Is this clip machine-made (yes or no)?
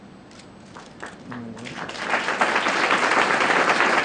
no